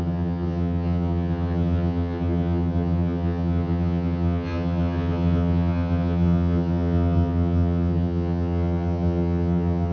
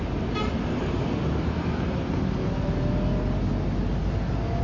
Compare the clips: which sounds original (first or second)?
second